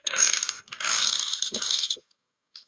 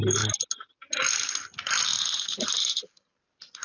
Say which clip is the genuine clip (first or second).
second